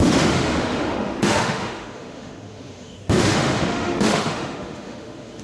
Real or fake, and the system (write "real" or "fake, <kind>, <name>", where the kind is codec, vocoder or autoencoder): fake, autoencoder, DAC-VAE